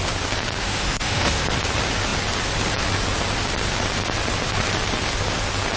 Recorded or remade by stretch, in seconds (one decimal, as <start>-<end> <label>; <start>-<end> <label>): 0.0-0.6 recorded; 0.6-1.4 remade; 1.4-5.8 recorded